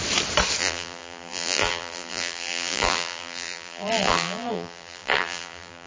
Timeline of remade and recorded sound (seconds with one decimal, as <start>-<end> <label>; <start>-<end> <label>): 0.0-0.6 recorded; 0.6-5.9 remade

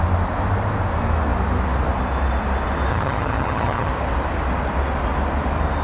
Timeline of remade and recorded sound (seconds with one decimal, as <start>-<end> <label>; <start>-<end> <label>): 0.0-2.9 recorded; 2.9-3.9 remade; 3.9-5.8 recorded

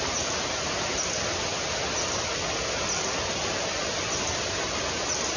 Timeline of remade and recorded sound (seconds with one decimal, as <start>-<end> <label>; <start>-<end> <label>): 0.0-5.4 recorded

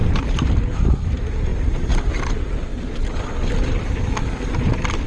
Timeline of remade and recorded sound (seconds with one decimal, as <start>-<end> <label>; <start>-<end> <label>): 0.0-0.5 remade; 0.5-1.5 recorded; 1.5-2.2 remade; 2.2-5.1 recorded

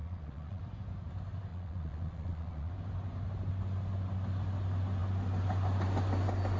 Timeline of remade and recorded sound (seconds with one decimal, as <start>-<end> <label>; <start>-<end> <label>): 0.0-0.6 remade; 0.6-1.5 recorded; 1.5-2.7 remade; 2.7-6.6 recorded

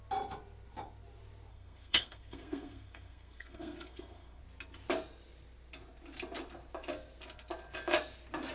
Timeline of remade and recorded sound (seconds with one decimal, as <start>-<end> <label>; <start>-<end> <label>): 0.0-1.5 recorded; 1.5-4.4 remade; 4.4-8.5 recorded